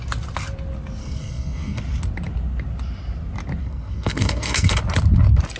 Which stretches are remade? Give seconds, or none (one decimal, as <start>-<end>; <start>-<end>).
1.0-1.8; 3.6-4.8